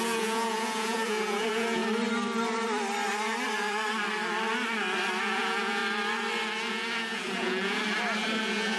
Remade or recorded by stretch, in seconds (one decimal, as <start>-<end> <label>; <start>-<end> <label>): 0.0-1.8 remade; 1.8-5.2 recorded; 5.2-5.8 remade; 5.8-6.7 recorded; 6.7-7.8 remade; 7.8-8.4 recorded; 8.4-8.8 remade